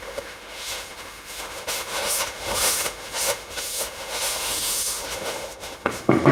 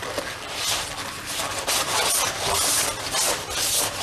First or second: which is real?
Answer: second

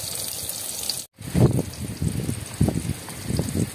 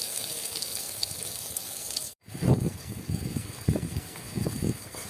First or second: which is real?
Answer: first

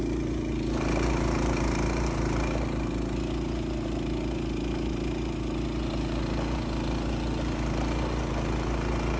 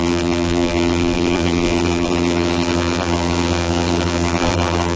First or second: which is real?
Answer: first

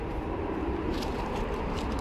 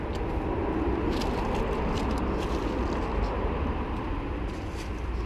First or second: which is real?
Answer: second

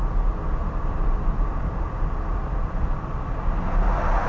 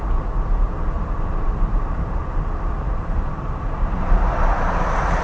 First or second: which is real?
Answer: first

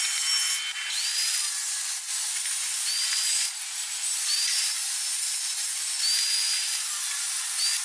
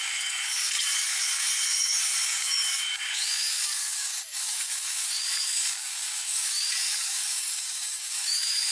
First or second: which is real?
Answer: first